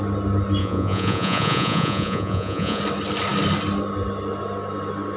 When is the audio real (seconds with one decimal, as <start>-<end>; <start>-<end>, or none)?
0.0-0.6; 2.8-5.2